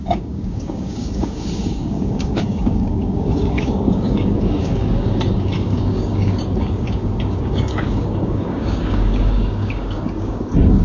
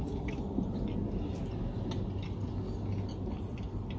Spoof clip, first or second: first